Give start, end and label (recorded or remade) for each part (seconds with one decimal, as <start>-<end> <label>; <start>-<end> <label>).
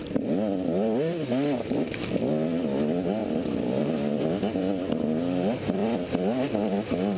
0.0-7.2 recorded